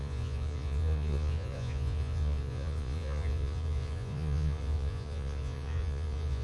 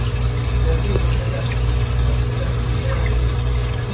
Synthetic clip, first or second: first